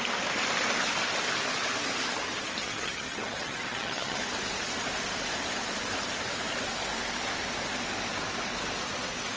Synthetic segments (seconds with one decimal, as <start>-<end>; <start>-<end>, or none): 2.6-4.2